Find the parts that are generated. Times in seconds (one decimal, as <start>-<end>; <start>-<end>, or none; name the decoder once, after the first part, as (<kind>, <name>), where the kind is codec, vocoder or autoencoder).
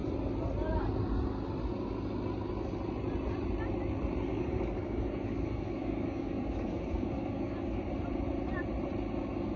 4.3-7.8 (codec, DAC)